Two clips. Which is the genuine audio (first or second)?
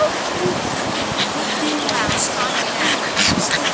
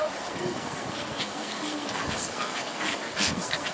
first